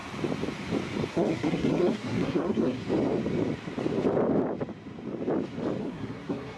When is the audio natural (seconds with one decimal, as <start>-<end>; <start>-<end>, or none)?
0.0-1.1; 2.8-5.8